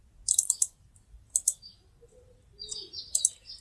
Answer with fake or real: real